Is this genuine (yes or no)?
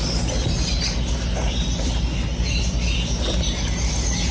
yes